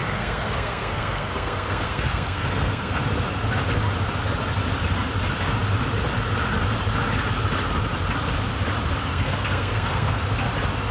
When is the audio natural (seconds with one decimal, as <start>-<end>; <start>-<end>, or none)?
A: 3.0-9.1; 10.2-10.9